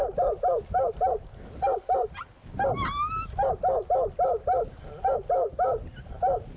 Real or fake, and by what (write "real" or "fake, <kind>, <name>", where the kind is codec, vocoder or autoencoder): real